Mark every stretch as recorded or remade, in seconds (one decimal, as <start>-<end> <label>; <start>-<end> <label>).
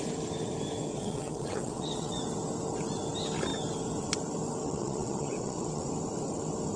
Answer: 0.0-0.9 recorded; 0.9-2.2 remade; 2.2-4.6 recorded; 4.6-5.9 remade; 5.9-6.8 recorded